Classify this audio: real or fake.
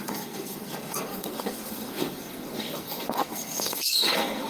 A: fake